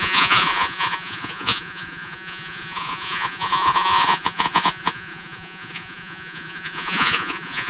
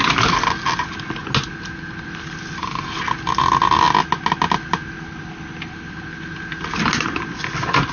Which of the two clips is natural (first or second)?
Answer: second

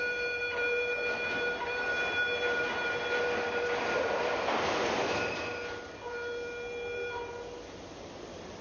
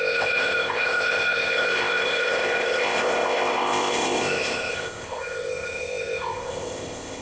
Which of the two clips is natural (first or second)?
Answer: first